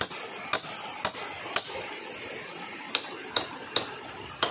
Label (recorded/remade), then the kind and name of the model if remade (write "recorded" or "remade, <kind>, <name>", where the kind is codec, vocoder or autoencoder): recorded